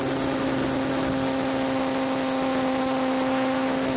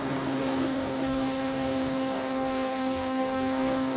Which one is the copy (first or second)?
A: second